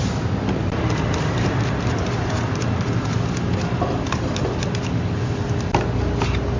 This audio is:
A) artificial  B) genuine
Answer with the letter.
B